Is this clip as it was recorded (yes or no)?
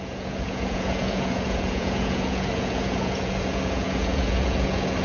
no